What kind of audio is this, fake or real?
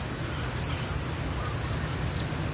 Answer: real